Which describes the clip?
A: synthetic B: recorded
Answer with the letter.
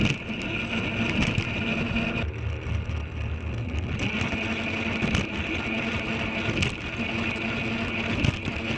B